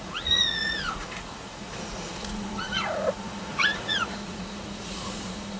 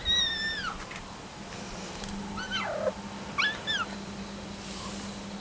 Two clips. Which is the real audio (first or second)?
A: second